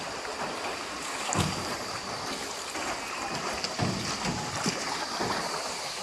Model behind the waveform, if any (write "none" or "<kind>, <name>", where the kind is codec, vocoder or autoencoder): none